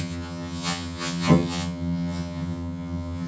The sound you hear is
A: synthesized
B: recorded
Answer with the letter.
A